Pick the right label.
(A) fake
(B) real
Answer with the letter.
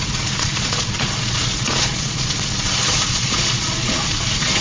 A